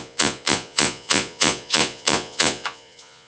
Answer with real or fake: fake